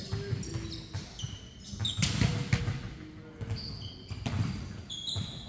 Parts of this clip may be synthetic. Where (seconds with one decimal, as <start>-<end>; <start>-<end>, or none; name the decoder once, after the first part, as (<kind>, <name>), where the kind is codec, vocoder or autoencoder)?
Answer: none